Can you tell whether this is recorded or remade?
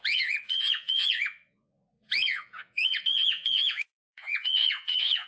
remade